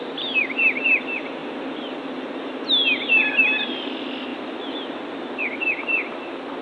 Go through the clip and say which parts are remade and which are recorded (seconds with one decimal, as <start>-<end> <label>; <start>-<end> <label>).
0.0-6.6 recorded